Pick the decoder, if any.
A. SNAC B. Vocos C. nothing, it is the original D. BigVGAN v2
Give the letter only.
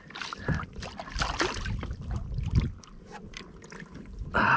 D